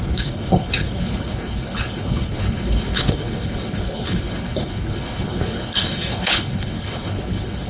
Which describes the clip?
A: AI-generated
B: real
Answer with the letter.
A